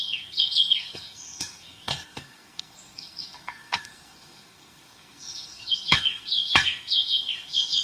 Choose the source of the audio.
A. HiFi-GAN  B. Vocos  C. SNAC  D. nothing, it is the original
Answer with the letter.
C